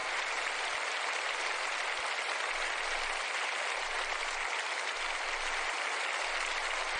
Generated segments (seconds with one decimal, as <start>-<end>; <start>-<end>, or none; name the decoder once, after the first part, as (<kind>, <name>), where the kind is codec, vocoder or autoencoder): none